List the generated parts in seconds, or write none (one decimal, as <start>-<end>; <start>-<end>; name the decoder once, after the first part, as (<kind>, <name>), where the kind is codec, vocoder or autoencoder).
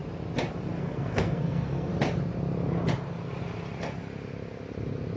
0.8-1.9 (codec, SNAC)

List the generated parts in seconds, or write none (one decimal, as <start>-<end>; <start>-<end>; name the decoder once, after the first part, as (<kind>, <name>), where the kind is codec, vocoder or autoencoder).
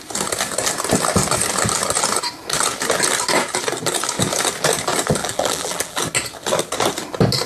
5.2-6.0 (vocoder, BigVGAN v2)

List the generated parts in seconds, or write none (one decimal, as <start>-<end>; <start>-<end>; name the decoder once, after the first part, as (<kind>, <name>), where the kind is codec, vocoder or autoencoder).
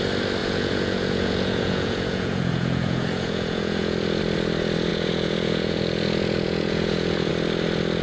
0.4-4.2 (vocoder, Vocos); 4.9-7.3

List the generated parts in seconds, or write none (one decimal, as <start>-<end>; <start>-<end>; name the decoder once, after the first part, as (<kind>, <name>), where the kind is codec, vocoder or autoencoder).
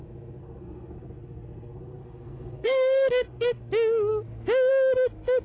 0.4-3.6 (codec, SNAC)